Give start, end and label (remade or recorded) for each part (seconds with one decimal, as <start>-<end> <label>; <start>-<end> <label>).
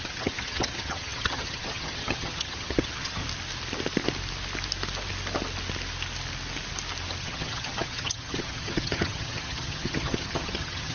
0.0-3.2 remade; 3.2-7.2 recorded; 7.2-10.9 remade